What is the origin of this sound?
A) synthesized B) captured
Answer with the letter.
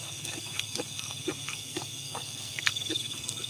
A